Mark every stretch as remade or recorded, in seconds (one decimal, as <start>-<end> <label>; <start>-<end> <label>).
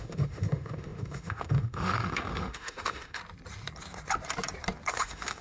0.0-3.2 remade; 3.2-4.9 recorded; 4.9-5.4 remade